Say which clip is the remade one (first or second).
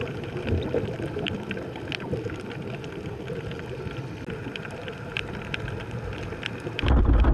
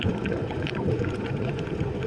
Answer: second